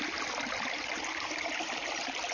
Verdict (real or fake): real